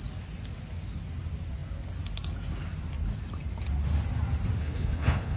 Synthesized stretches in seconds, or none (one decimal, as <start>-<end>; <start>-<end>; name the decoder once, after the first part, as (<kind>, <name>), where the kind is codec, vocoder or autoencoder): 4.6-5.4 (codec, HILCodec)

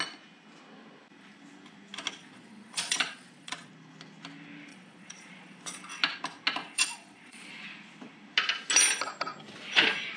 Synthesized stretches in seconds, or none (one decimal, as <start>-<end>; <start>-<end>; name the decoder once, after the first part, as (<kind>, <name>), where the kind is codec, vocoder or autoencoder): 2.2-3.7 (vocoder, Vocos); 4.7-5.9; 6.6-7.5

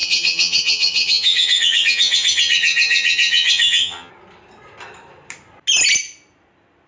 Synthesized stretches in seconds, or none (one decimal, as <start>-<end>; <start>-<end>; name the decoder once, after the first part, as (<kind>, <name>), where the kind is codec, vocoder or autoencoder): 0.0-4.1 (vocoder, HiFi-GAN)

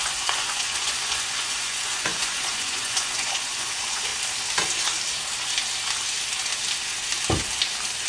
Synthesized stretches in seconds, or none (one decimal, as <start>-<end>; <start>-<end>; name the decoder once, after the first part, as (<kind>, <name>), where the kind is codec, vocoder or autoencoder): 0.0-4.1 (vocoder, Vocos)

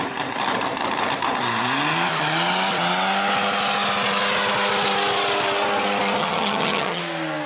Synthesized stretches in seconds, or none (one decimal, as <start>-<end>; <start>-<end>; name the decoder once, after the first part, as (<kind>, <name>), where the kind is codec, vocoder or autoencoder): 6.2-7.0 (vocoder, HiFi-GAN)

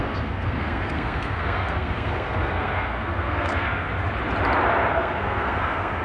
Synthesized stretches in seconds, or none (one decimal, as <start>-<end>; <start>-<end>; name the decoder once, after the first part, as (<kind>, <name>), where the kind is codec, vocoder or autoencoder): 0.0-3.9 (codec, SNAC); 4.9-6.0

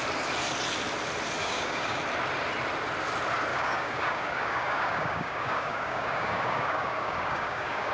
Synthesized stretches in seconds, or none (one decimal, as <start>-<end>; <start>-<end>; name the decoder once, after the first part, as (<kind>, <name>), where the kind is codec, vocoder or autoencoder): 1.4-2.0 (codec, DAC); 3.5-7.9